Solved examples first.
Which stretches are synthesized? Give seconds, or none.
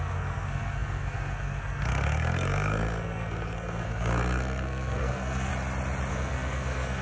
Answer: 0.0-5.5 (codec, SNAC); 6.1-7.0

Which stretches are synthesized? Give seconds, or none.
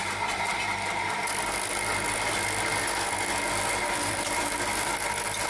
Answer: 0.0-0.5 (vocoder, BigVGAN v2); 3.8-5.5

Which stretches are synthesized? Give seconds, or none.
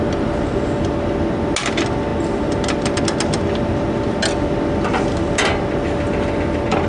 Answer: none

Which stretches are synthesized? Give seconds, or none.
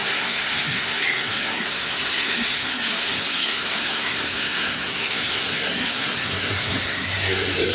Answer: 0.0-7.7 (codec, SNAC)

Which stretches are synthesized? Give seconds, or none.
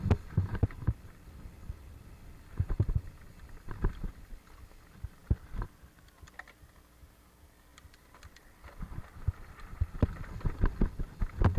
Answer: 0.5-3.7 (vocoder, BigVGAN v2); 7.7-9.0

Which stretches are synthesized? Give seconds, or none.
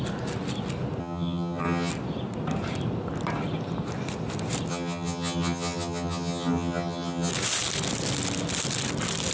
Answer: 1.0-1.9 (vocoder, HiFi-GAN); 4.7-7.3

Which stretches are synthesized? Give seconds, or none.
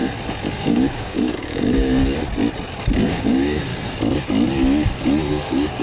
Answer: 0.6-2.0 (codec, DAC); 3.1-3.7; 5.3-5.8